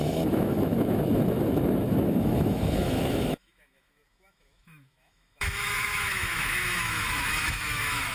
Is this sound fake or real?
fake